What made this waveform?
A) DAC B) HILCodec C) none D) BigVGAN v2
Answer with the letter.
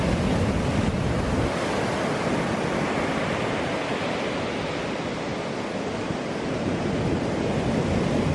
C